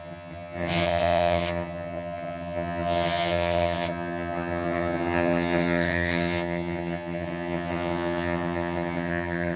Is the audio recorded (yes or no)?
no